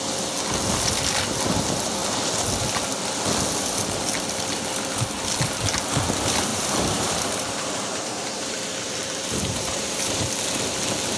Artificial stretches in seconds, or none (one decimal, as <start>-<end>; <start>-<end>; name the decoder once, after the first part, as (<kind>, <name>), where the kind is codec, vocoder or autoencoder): 6.5-10.3 (vocoder, BigVGAN v2)